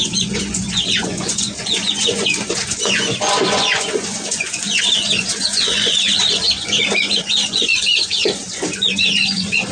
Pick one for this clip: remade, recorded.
remade